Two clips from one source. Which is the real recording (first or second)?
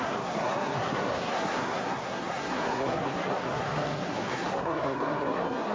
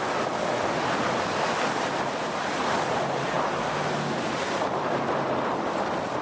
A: second